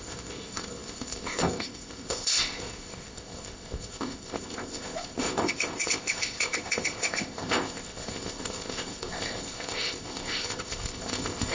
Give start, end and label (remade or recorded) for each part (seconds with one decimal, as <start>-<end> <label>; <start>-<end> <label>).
0.0-11.5 remade